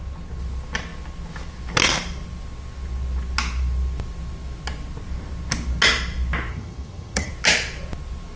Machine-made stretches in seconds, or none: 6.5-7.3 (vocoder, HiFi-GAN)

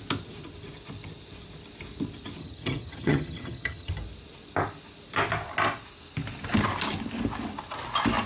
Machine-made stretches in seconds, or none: 2.4-3.9 (vocoder, HiFi-GAN)

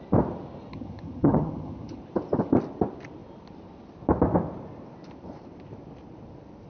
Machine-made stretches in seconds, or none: 0.7-2.0 (vocoder, HiFi-GAN)

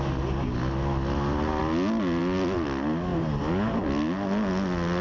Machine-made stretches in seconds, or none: none

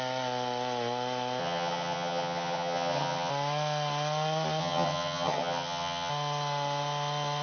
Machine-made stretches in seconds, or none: 1.4-3.3 (vocoder, HiFi-GAN); 4.6-6.1

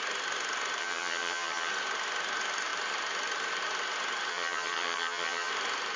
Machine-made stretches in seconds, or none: 0.8-1.7 (vocoder, HiFi-GAN); 4.3-5.5